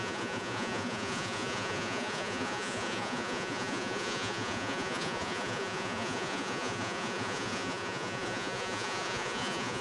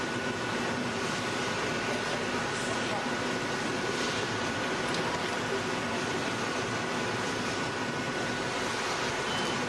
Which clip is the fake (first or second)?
first